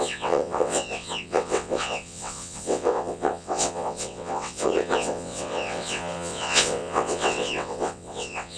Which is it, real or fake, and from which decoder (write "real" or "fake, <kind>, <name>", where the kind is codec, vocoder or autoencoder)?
fake, vocoder, WaveNeXt